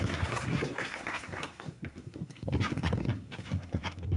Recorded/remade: remade